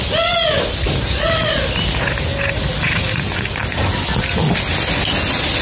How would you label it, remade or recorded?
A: recorded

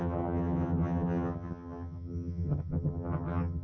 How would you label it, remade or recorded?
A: remade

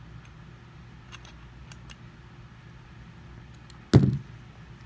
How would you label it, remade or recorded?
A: recorded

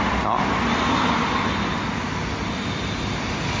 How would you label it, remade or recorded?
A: recorded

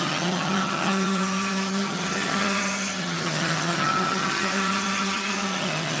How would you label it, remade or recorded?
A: remade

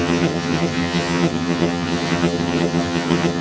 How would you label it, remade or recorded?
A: remade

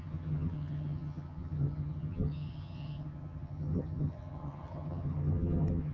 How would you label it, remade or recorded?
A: remade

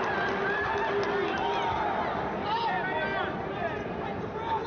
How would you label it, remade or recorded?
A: recorded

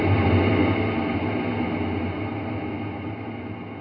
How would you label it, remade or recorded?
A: recorded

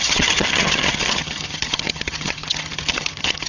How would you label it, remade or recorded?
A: remade